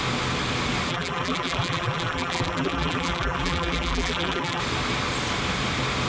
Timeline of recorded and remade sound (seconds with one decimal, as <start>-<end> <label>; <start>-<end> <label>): 0.0-0.9 recorded; 0.9-4.6 remade; 4.6-6.1 recorded